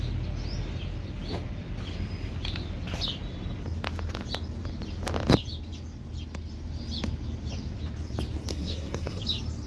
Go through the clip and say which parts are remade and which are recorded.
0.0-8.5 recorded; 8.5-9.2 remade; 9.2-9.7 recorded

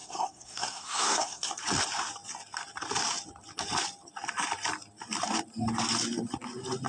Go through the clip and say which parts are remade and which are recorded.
0.0-1.5 remade; 1.5-6.9 recorded

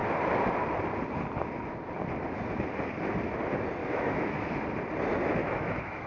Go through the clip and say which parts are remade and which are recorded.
0.0-3.8 recorded; 3.8-4.6 remade; 4.6-5.4 recorded; 5.4-6.1 remade

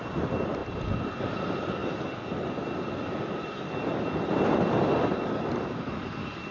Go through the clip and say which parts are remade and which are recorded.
0.0-6.5 recorded

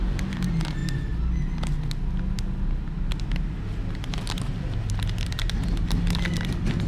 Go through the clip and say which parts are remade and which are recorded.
0.0-6.9 recorded